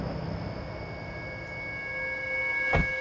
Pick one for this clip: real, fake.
real